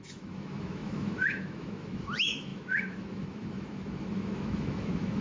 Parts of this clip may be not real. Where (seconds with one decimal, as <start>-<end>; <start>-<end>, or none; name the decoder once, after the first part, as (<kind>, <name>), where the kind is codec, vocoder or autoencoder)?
0.0-5.2 (autoencoder, DAC-VAE)